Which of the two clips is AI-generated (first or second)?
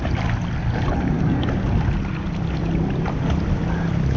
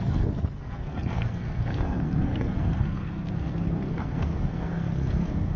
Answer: second